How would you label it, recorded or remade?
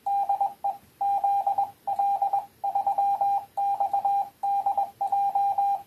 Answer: recorded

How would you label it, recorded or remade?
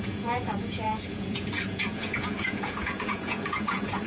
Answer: remade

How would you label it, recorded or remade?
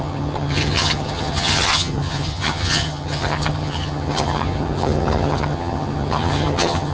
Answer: remade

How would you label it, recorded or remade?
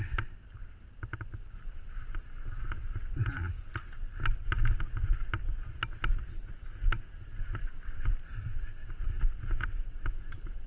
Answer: recorded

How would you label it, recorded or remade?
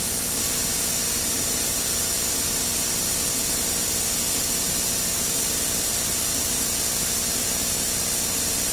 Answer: recorded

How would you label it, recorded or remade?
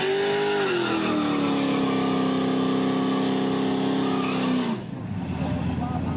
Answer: recorded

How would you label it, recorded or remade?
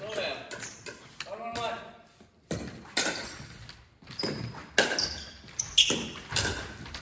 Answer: recorded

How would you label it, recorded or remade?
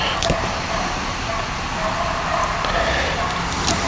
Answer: recorded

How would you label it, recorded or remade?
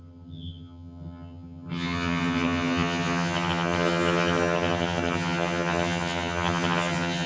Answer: remade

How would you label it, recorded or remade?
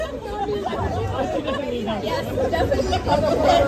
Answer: recorded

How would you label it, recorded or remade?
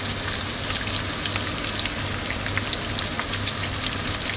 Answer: recorded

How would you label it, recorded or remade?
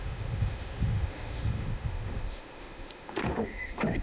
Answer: remade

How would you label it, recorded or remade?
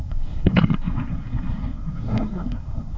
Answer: remade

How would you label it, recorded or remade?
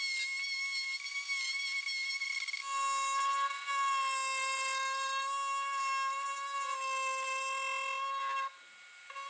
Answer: recorded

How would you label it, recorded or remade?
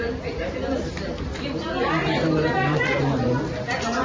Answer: recorded